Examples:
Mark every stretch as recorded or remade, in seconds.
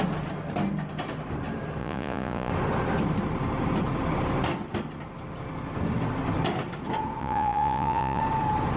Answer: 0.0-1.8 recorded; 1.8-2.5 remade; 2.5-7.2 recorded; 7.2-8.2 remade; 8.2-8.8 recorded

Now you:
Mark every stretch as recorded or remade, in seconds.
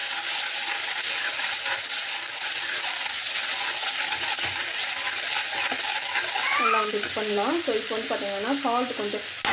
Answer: 0.0-9.5 recorded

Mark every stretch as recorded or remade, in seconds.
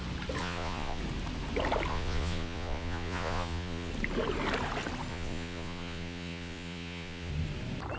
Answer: 0.0-0.4 recorded; 0.4-1.0 remade; 1.0-1.9 recorded; 1.9-3.9 remade; 3.9-5.1 recorded; 5.1-7.3 remade; 7.3-8.0 recorded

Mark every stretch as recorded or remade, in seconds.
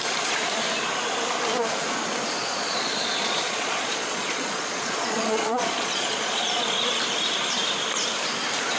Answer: 0.0-2.4 recorded; 2.4-6.6 remade; 6.6-8.8 recorded